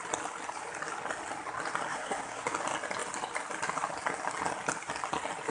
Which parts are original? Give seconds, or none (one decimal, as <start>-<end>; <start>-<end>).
0.0-1.9; 2.5-5.5